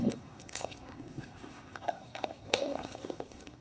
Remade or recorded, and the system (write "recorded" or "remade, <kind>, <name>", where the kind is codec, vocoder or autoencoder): remade, codec, SNAC